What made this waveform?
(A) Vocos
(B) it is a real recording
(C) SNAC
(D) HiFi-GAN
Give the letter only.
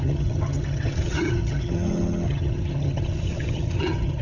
D